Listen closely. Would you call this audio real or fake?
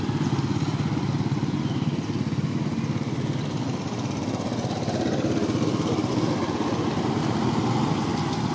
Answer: real